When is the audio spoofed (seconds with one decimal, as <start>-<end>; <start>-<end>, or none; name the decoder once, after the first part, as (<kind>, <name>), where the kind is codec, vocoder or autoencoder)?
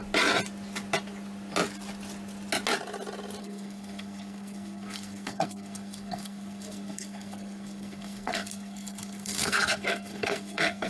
3.4-10.9 (codec, SNAC)